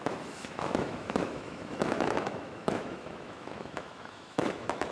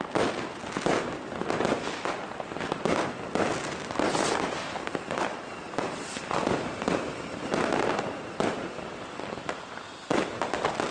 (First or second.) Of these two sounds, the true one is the second